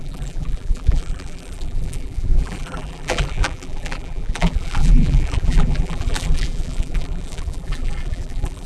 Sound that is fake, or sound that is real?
fake